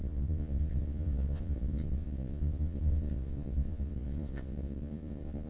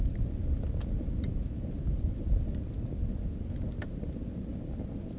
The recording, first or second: second